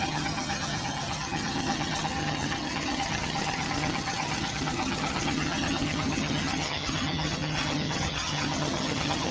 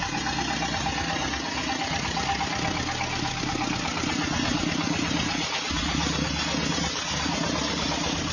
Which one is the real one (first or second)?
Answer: second